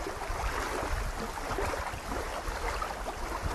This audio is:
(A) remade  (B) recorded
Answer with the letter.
B